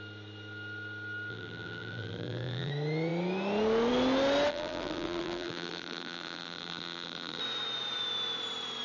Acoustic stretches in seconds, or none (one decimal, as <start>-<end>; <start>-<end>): 0.0-1.3; 2.7-4.5; 7.4-8.8